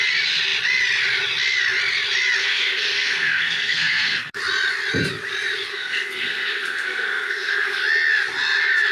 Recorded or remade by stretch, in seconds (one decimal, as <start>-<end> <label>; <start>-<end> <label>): 0.0-2.4 recorded; 2.4-4.4 remade; 4.4-5.7 recorded; 5.7-7.8 remade; 7.8-8.9 recorded